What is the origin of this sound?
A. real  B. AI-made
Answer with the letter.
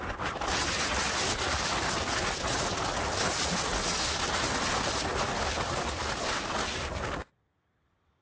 A